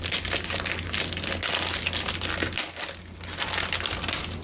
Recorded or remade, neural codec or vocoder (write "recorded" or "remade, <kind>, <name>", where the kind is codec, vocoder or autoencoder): recorded